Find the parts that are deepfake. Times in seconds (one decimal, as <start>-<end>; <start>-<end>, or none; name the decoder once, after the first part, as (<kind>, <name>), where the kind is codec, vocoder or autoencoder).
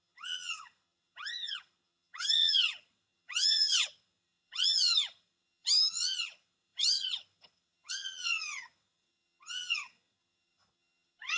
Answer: 0.0-11.4 (vocoder, HiFi-GAN)